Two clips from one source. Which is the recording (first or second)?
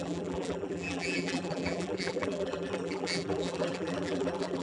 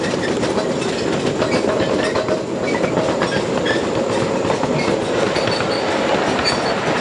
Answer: second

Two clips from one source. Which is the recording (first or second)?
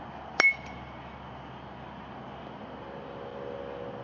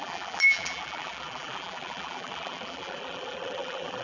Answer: first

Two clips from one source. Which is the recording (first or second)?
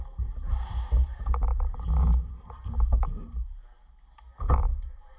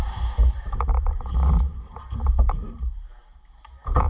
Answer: first